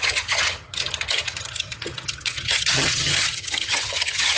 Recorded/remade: remade